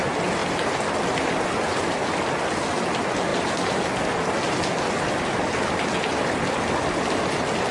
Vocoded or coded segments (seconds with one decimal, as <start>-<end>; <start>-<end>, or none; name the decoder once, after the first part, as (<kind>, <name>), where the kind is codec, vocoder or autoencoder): 0.4-1.4 (vocoder, BigVGAN v2)

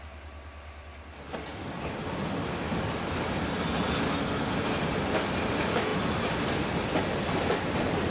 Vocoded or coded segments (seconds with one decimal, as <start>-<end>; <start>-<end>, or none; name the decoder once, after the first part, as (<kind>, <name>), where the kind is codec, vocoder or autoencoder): 1.5-3.1 (vocoder, BigVGAN v2)

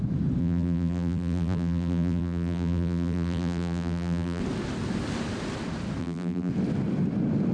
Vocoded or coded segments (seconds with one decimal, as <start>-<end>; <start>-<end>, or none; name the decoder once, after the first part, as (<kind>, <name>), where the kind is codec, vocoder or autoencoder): 0.4-4.4 (vocoder, BigVGAN v2); 6.0-6.5